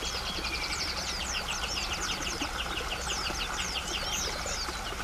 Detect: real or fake real